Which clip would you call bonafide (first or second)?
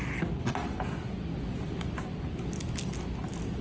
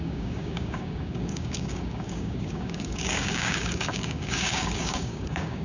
first